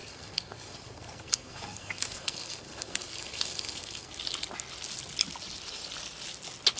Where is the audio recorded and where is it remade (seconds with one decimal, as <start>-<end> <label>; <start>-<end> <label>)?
0.0-4.1 remade; 4.1-6.8 recorded